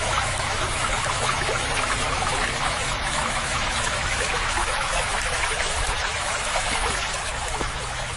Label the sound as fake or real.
fake